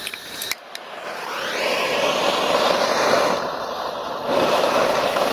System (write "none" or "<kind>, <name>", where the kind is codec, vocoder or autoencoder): vocoder, BigVGAN v2